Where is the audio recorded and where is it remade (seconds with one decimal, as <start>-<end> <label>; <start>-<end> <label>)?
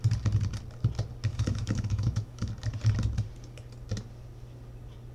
0.0-1.3 recorded; 1.3-2.5 remade; 2.5-5.1 recorded